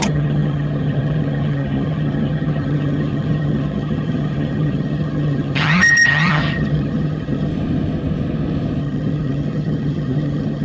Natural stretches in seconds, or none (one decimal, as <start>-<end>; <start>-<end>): 7.5-8.8